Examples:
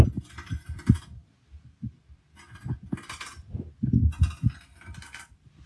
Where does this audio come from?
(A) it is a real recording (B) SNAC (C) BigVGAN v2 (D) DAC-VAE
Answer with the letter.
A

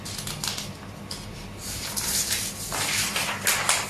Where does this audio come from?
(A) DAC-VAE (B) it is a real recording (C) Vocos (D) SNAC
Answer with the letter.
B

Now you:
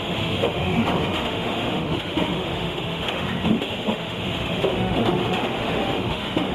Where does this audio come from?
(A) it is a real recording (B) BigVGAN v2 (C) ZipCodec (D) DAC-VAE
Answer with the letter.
D